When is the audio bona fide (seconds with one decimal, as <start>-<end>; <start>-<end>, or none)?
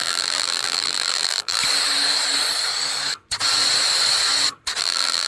1.6-4.8